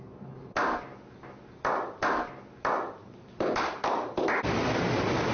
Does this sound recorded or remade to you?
recorded